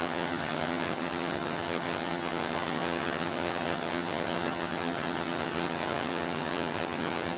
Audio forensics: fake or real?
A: fake